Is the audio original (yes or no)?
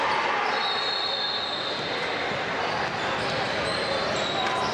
yes